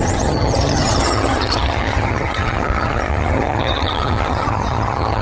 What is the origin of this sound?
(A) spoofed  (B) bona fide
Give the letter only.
A